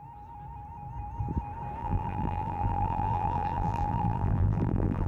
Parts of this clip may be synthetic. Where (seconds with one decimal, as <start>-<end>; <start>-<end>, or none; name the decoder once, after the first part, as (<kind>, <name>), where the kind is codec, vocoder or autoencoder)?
1.8-5.1 (vocoder, BigVGAN v2)